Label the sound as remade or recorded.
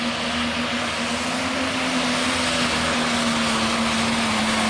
recorded